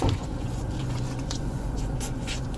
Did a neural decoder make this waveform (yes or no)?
yes